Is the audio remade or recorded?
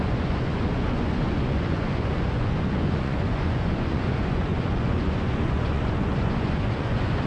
remade